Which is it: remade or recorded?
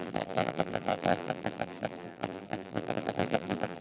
remade